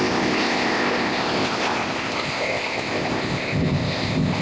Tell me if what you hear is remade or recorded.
remade